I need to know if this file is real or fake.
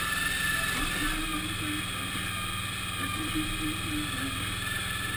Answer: real